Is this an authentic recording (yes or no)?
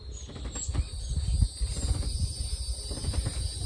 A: yes